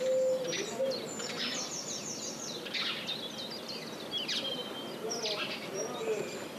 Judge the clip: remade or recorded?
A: recorded